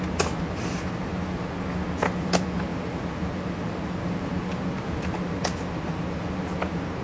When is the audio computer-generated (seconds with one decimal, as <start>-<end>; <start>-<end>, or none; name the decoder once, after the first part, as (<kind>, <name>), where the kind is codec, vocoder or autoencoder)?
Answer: 0.6-1.5 (vocoder, BigVGAN v2); 2.7-7.0